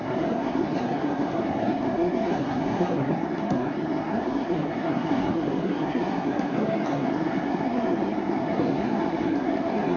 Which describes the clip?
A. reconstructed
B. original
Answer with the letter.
A